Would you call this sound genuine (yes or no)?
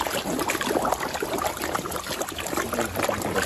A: yes